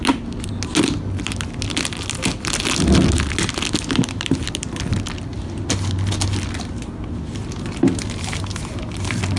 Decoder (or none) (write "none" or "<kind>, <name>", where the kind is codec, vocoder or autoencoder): none